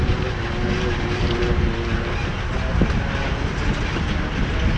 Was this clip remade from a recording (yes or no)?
no